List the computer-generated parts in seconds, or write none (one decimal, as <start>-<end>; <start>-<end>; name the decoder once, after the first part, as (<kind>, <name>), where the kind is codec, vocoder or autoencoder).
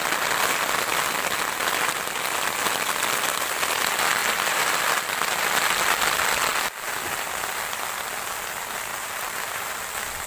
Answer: 4.2-4.8 (vocoder, BigVGAN v2); 8.9-9.7